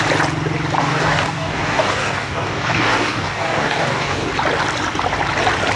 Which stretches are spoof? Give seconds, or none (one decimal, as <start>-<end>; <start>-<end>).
0.8-4.3